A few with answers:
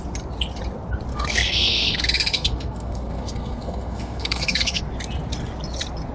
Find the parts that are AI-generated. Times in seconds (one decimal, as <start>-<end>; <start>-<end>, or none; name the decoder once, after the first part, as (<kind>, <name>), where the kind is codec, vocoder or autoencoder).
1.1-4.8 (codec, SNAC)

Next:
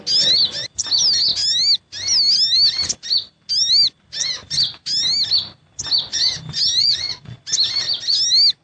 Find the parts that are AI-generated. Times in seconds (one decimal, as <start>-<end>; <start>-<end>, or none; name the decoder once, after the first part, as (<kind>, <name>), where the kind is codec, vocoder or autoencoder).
6.8-7.4 (vocoder, Vocos)

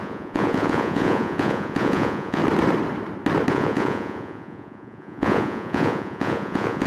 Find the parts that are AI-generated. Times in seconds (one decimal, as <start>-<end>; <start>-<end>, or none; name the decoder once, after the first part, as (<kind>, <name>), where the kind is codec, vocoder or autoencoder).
0.0-2.4 (vocoder, Vocos); 3.5-6.9

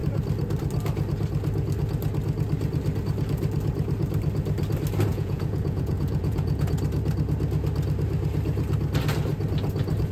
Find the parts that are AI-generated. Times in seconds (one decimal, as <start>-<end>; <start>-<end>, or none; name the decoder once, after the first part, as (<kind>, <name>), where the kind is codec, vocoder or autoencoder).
5.1-6.7 (vocoder, Vocos)

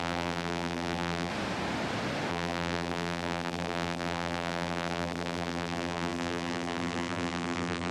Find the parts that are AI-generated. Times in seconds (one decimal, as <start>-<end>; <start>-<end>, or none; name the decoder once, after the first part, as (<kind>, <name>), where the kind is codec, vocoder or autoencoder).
0.0-1.3 (vocoder, BigVGAN v2); 2.3-7.9